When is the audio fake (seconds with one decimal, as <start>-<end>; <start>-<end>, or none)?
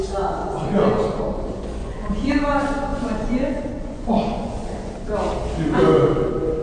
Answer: 0.4-1.2; 1.8-2.3; 2.9-4.9